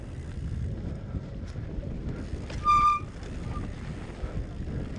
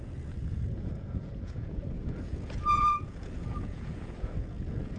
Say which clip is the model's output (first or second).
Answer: second